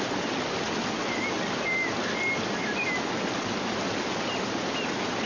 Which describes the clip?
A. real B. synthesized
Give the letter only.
A